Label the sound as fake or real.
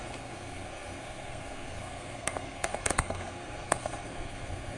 fake